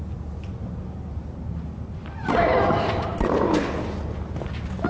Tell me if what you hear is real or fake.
real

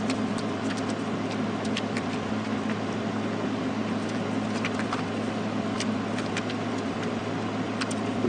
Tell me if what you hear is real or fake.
real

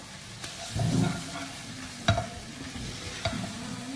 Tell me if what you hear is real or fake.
real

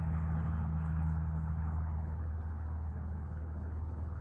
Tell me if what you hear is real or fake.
fake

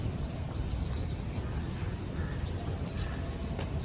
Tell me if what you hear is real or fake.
real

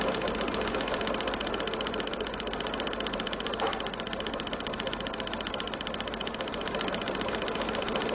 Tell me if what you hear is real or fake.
real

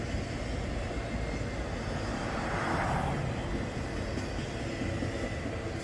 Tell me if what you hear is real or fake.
real